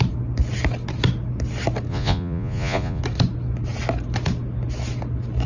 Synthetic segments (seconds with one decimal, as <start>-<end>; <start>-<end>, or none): 1.9-3.0